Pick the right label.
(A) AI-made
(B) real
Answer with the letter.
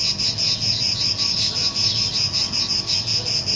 B